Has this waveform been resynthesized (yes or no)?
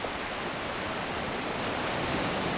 no